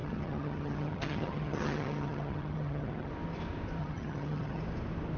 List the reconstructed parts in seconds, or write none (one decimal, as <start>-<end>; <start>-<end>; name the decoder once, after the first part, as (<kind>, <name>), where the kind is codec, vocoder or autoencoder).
0.0-3.1 (vocoder, HiFi-GAN); 3.8-4.6